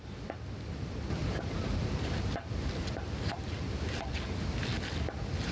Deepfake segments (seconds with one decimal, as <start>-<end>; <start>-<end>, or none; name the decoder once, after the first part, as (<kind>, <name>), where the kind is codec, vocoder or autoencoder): 1.2-4.5 (vocoder, BigVGAN v2)

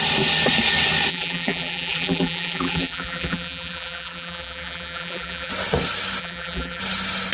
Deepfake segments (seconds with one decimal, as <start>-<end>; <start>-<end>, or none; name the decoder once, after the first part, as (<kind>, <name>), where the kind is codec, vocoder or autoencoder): 1.1-5.5 (vocoder, BigVGAN v2); 6.2-6.8

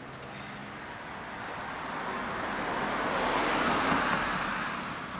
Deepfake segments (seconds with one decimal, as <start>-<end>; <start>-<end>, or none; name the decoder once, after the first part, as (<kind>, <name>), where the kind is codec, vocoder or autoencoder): none

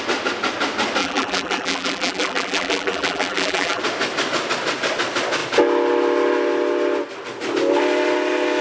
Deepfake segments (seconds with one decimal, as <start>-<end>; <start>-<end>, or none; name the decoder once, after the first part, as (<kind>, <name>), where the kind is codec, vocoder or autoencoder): 1.0-3.8 (vocoder, BigVGAN v2)